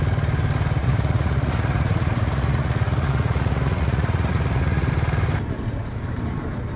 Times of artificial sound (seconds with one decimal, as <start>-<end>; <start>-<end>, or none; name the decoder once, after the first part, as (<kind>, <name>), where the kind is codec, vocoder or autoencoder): 0.8-4.9 (vocoder, Vocos)

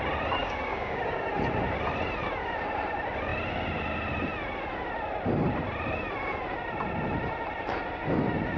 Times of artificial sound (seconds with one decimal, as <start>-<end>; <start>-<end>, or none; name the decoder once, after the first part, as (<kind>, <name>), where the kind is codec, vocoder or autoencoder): 0.4-1.3 (codec, DAC)